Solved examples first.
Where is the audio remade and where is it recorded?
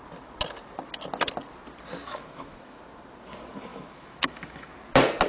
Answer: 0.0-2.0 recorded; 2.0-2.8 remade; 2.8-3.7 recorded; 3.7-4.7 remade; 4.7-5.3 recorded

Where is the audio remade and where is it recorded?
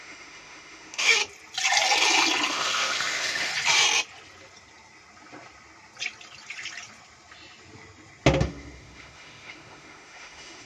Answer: 0.0-1.2 remade; 1.2-2.5 recorded; 2.5-3.5 remade; 3.5-8.4 recorded; 8.4-10.7 remade